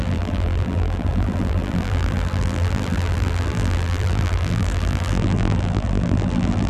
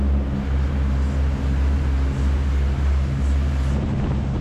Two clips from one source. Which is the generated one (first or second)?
first